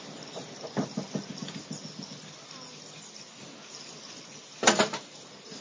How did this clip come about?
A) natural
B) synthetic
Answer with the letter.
A